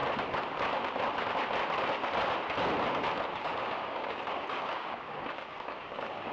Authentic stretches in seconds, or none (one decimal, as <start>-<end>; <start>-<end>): 0.0-3.3